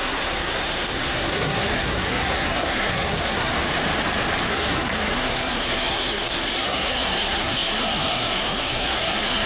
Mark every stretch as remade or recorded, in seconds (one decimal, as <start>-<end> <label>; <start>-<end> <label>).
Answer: 0.0-3.5 remade; 3.5-4.5 recorded; 4.5-9.5 remade